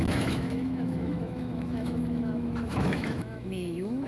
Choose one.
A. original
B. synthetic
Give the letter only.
B